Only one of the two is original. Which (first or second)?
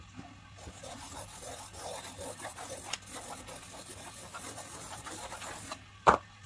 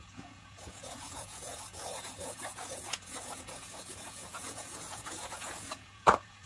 first